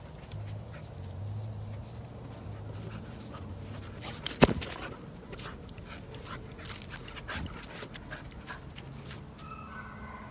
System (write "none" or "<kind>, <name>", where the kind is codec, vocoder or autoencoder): none